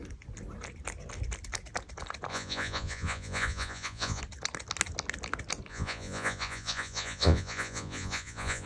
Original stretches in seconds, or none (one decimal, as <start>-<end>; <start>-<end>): 0.0-2.3; 4.2-5.7